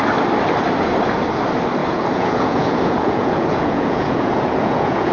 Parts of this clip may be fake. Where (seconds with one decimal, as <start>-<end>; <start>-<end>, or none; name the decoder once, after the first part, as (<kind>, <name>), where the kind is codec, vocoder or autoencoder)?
1.8-5.1 (vocoder, Vocos)